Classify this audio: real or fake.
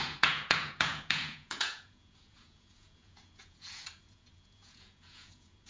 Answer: fake